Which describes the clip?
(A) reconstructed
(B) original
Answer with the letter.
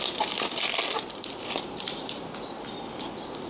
B